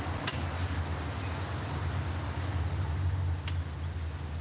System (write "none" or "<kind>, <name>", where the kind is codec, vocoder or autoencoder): none